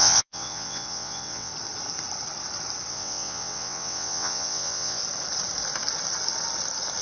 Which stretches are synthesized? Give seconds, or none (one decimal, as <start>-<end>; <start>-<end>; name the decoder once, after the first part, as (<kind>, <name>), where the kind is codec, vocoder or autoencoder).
0.0-1.5 (vocoder, WaveNeXt); 2.9-5.0